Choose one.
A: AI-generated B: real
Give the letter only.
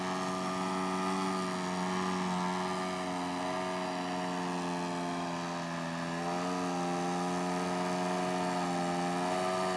B